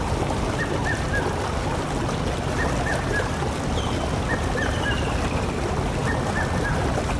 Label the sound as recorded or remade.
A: recorded